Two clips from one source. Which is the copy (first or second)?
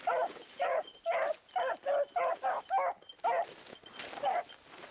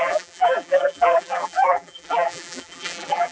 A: second